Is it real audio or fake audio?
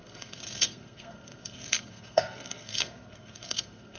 fake